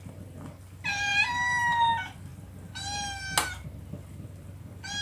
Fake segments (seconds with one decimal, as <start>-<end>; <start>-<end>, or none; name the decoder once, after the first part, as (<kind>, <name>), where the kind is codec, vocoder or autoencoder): none